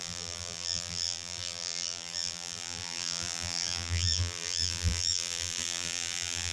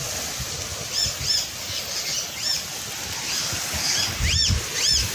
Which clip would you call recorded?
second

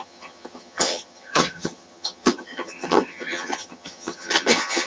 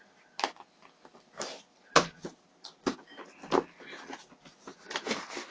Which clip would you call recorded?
second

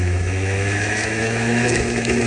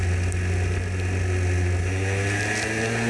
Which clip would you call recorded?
second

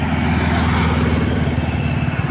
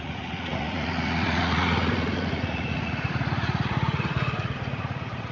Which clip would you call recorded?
first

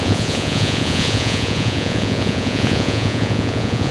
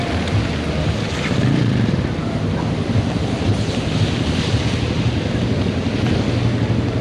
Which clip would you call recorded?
second